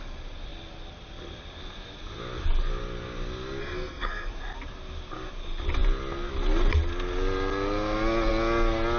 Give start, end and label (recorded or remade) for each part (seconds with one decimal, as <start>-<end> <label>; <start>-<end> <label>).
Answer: 0.0-3.6 recorded; 3.6-4.3 remade; 4.3-9.0 recorded